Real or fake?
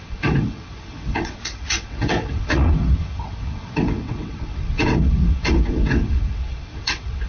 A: fake